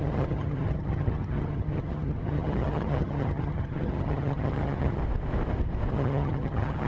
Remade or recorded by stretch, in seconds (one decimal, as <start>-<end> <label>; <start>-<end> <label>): 0.0-5.0 remade; 5.0-5.9 recorded; 5.9-6.9 remade